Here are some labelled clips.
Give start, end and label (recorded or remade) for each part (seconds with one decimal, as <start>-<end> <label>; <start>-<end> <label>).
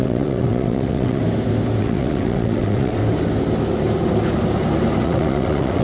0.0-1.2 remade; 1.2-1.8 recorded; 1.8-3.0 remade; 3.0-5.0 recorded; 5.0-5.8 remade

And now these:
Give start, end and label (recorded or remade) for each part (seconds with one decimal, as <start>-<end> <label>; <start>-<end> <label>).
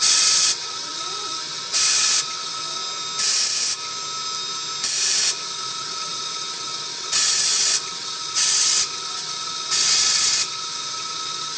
0.0-2.8 remade; 2.8-5.4 recorded; 5.4-11.6 remade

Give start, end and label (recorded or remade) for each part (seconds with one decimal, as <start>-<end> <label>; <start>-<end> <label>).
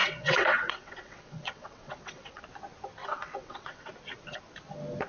0.0-2.4 remade; 2.4-3.0 recorded; 3.0-3.9 remade; 3.9-5.1 recorded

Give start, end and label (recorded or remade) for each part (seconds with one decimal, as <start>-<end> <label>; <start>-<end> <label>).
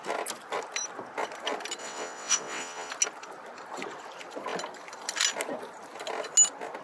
0.0-1.8 recorded; 1.8-2.9 remade; 2.9-6.8 recorded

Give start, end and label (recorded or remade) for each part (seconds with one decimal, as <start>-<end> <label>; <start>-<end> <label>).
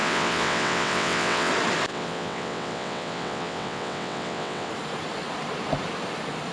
0.0-1.5 remade; 1.5-1.9 recorded; 1.9-4.7 remade; 4.7-6.5 recorded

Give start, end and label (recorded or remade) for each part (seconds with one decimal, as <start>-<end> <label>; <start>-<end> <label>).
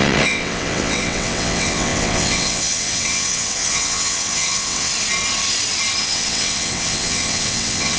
0.0-4.9 remade; 4.9-6.0 recorded; 6.0-8.0 remade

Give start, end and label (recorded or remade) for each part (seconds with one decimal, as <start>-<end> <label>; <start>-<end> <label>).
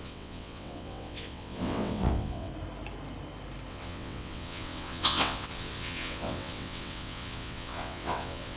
0.0-2.5 remade; 2.5-3.7 recorded; 3.7-8.6 remade